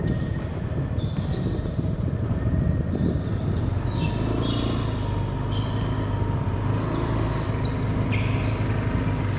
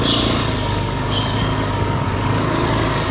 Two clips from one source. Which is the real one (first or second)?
first